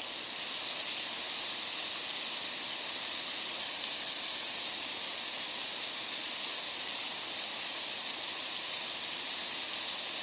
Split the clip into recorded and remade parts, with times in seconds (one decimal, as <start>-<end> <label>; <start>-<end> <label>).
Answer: 0.0-10.2 recorded